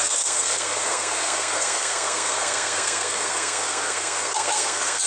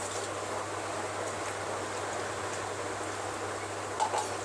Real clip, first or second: second